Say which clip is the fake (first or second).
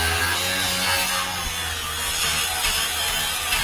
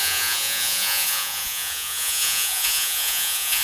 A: second